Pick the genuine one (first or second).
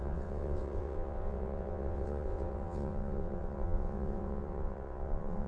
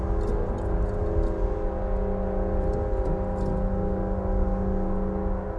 second